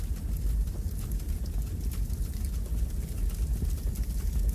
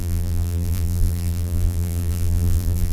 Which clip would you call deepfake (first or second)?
second